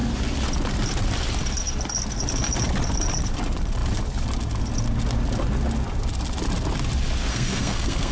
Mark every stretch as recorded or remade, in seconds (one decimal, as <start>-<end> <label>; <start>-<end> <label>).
0.0-7.3 recorded; 7.3-8.1 remade